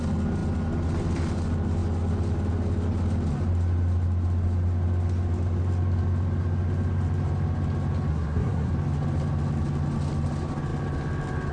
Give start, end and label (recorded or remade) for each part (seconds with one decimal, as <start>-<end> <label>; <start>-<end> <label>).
0.0-8.1 recorded; 8.1-8.7 remade; 8.7-11.5 recorded